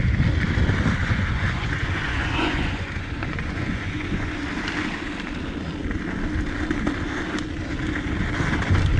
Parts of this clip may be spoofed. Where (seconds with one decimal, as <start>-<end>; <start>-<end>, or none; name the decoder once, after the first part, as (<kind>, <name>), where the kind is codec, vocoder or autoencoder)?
1.0-4.3 (vocoder, Vocos)